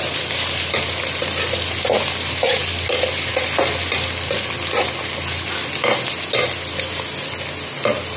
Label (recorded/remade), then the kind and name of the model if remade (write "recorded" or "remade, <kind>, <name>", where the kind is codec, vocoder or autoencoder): recorded